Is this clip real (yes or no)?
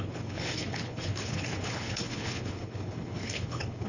no